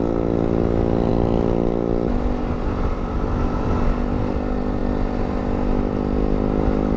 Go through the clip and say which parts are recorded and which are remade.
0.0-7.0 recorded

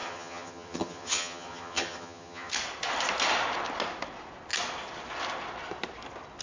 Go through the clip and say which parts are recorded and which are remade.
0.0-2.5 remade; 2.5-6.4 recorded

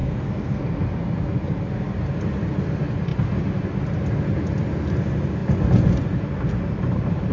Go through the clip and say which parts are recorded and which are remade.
0.0-0.6 remade; 0.6-7.3 recorded

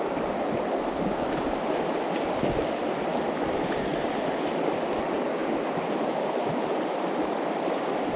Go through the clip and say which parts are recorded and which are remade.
0.0-8.2 recorded

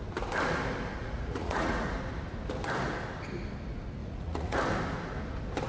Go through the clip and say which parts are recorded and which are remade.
0.0-1.0 recorded; 1.0-1.9 remade; 1.9-4.0 recorded; 4.0-4.6 remade; 4.6-5.7 recorded